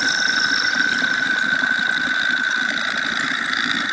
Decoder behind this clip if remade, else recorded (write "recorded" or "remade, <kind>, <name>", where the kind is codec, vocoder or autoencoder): recorded